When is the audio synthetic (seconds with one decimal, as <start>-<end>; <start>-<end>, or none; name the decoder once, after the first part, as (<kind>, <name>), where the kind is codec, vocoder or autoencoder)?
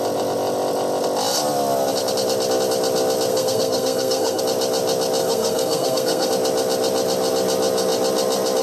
3.3-4.4 (codec, SNAC); 5.2-6.3